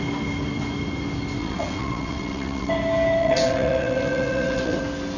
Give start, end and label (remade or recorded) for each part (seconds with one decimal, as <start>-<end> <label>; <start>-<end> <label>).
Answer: 0.0-1.4 recorded; 1.4-2.7 remade; 2.7-3.2 recorded; 3.2-4.8 remade; 4.8-5.2 recorded